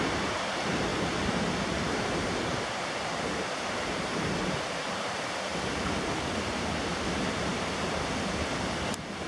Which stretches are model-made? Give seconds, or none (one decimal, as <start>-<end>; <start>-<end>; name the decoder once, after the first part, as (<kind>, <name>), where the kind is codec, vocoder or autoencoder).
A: 0.0-0.9 (vocoder, BigVGAN v2); 1.5-5.5; 8.8-9.3